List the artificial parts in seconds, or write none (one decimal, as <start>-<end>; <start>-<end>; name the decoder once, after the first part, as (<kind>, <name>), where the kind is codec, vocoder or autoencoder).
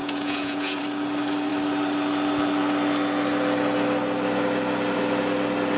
0.0-0.8 (vocoder, Vocos)